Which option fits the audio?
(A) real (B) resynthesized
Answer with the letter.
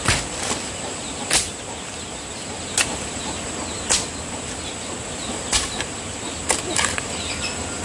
A